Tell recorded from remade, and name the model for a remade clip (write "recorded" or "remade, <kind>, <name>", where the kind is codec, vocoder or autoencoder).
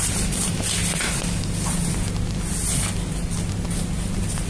recorded